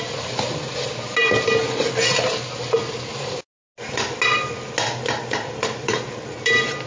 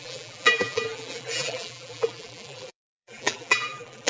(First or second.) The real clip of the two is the first